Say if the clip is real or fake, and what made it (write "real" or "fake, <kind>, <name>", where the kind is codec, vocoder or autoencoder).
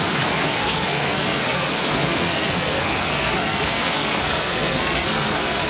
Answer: fake, codec, SNAC